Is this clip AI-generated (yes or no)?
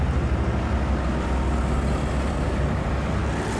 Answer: no